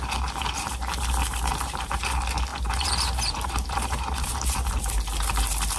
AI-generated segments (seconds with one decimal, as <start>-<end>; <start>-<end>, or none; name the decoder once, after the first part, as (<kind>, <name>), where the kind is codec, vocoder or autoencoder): 1.3-2.0 (vocoder, BigVGAN v2); 2.5-4.7